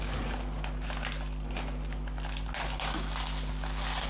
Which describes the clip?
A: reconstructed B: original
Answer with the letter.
B